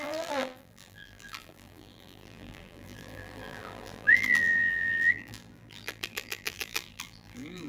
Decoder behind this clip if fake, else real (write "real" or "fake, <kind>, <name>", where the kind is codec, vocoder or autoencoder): fake, vocoder, BigVGAN v2